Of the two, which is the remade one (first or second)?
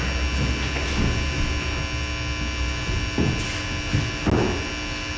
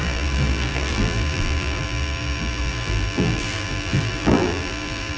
second